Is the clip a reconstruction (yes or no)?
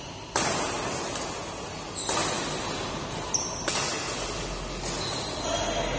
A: no